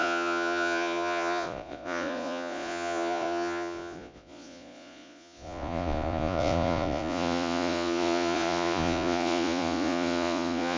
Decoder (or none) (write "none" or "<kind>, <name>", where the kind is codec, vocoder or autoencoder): vocoder, Vocos